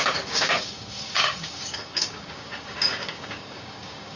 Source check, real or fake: fake